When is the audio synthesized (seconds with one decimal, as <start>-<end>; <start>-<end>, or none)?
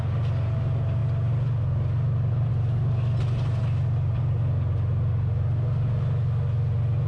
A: none